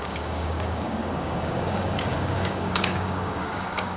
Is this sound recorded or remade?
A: remade